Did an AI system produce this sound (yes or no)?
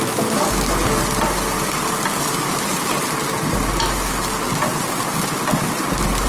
no